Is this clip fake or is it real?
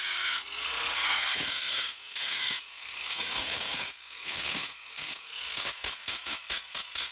fake